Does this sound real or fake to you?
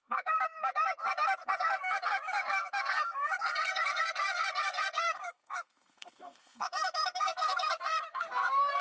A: fake